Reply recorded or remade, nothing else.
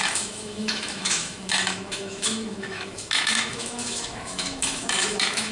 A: remade